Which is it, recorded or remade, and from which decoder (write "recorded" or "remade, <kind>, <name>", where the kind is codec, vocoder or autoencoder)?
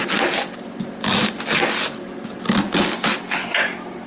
recorded